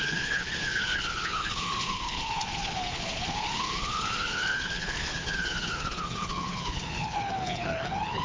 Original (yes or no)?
no